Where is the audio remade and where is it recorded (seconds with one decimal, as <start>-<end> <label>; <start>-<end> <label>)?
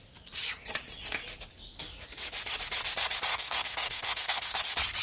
0.0-3.3 recorded; 3.3-4.6 remade; 4.6-5.0 recorded